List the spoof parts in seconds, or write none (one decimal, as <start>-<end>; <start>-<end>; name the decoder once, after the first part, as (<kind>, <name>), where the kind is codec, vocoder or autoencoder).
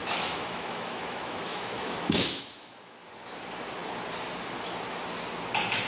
0.0-3.1 (autoencoder, DAC-VAE)